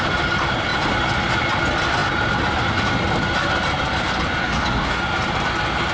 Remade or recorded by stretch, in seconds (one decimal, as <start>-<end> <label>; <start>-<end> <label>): 0.0-4.4 recorded; 4.4-5.0 remade; 5.0-5.9 recorded